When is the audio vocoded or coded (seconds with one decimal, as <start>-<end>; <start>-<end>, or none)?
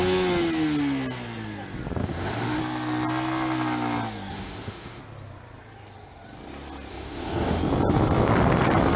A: 2.0-2.6; 4.3-5.0; 6.9-7.6